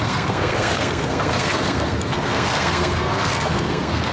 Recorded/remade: remade